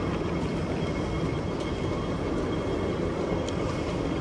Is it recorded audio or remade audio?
recorded